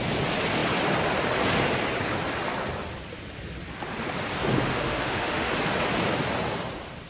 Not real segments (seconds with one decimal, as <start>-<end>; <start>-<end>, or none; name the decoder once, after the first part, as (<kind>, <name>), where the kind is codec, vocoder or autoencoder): 4.7-5.5 (autoencoder, DAC-VAE)